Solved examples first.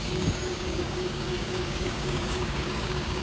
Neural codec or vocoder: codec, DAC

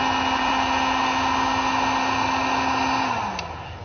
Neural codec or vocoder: none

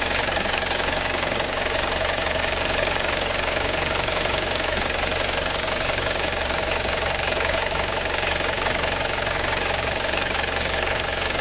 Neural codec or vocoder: codec, DAC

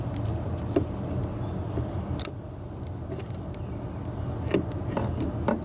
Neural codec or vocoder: none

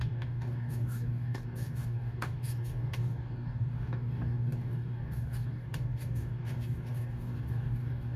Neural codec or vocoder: codec, DAC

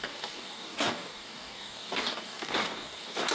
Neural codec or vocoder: codec, DAC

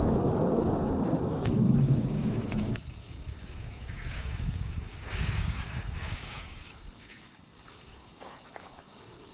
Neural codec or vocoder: codec, DAC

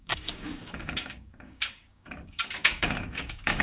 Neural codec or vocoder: codec, DAC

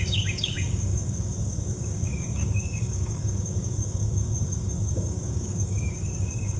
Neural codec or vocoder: codec, DAC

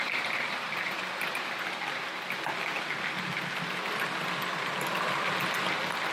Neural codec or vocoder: none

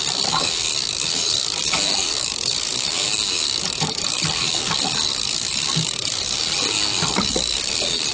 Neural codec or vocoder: codec, DAC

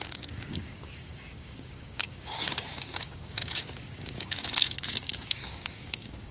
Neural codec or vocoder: codec, DAC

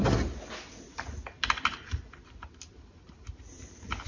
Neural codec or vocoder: none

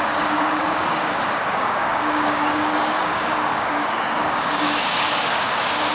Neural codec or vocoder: codec, DAC